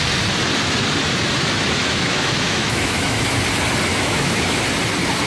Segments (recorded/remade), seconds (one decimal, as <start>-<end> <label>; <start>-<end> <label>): 0.0-1.8 recorded; 1.8-3.3 remade; 3.3-3.9 recorded; 3.9-4.6 remade; 4.6-5.3 recorded